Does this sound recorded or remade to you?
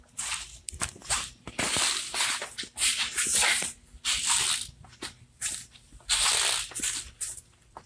remade